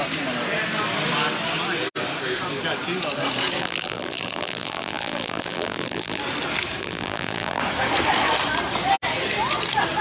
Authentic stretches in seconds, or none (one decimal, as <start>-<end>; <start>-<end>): 0.0-3.6; 6.2-6.8; 7.6-10.0